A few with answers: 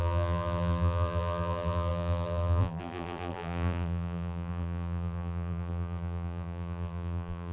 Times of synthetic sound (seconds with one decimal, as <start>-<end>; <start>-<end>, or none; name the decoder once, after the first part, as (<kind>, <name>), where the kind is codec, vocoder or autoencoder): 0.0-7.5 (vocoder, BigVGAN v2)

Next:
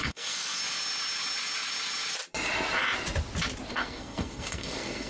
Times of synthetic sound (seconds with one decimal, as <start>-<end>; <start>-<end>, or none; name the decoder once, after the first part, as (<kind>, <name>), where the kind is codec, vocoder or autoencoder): 0.0-0.6 (codec, SNAC); 3.7-5.1

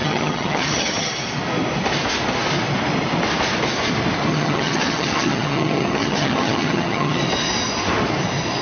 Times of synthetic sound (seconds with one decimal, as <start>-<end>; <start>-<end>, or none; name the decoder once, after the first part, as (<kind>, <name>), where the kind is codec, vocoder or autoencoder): 0.0-1.1 (vocoder, HiFi-GAN); 4.3-7.2

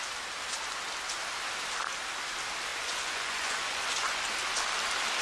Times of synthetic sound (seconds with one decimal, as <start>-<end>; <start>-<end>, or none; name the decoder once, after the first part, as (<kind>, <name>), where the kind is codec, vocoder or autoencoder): 2.7-4.2 (vocoder, Vocos)

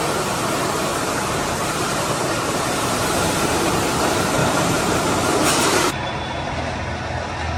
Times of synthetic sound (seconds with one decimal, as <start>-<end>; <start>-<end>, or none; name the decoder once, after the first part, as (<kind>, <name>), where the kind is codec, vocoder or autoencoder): 0.9-3.6 (vocoder, BigVGAN v2); 4.4-5.9